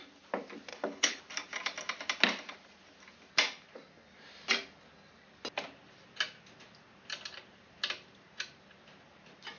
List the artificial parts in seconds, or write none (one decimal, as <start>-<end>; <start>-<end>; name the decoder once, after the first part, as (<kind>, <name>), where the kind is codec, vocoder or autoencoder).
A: 0.7-1.2 (codec, HILCodec)